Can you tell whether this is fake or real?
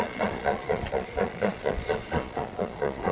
fake